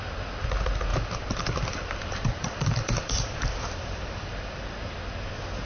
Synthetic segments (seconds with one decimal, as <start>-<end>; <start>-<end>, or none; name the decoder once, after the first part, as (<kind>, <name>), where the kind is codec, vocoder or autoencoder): 0.9-4.3 (vocoder, BigVGAN v2)